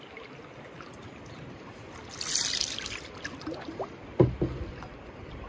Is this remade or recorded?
recorded